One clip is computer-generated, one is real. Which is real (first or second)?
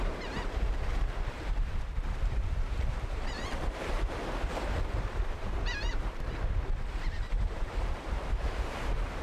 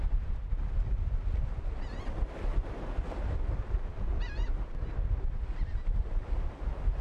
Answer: second